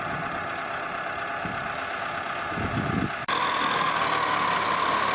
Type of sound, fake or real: real